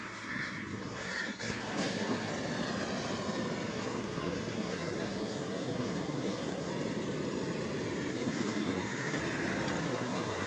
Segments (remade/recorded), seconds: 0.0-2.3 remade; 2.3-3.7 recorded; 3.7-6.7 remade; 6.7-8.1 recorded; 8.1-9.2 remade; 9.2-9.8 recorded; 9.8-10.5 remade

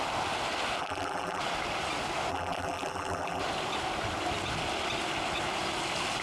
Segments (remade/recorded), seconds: 0.0-0.8 recorded; 0.8-1.4 remade; 1.4-2.3 recorded; 2.3-3.4 remade; 3.4-6.2 recorded

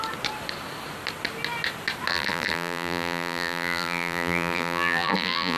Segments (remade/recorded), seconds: 0.0-2.1 recorded; 2.1-5.6 remade

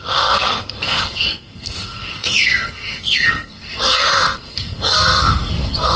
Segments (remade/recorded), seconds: 0.0-6.0 remade

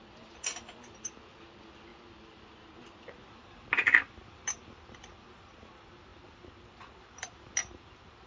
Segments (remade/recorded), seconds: 0.0-8.3 recorded

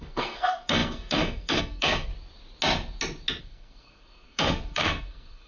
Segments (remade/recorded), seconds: 0.0-2.1 remade; 2.1-3.4 recorded; 3.4-5.5 remade